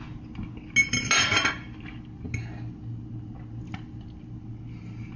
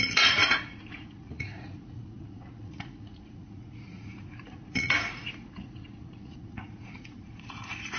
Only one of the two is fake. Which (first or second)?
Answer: second